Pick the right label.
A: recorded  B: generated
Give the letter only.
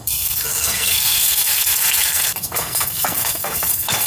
B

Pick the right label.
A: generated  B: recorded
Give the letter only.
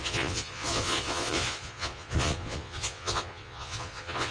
A